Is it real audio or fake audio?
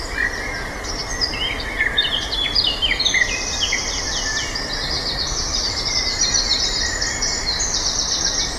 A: fake